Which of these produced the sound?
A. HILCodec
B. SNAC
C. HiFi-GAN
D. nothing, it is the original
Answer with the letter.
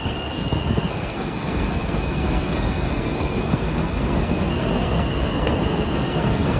B